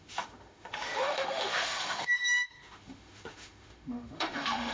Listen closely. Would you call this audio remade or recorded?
remade